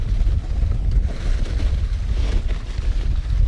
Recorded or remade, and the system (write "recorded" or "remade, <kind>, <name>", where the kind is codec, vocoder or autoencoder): recorded